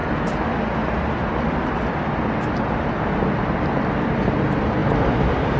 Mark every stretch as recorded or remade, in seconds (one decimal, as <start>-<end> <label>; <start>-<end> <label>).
0.0-0.5 remade; 0.5-5.6 recorded